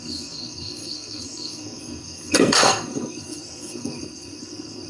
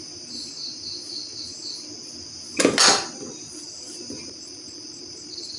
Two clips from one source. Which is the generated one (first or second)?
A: first